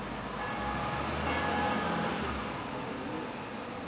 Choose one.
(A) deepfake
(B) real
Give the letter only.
B